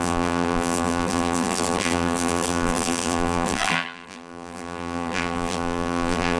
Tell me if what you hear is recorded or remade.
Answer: remade